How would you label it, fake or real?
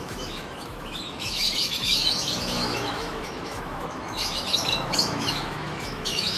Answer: fake